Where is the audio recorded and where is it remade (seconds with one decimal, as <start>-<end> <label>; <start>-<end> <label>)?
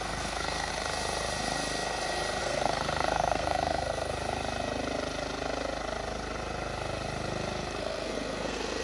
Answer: 0.0-0.7 remade; 0.7-2.4 recorded; 2.4-4.1 remade; 4.1-7.8 recorded; 7.8-8.8 remade